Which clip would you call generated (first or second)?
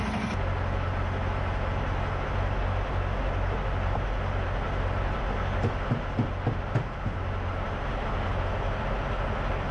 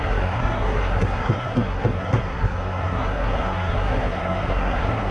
second